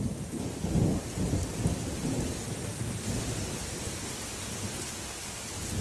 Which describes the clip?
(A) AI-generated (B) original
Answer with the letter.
B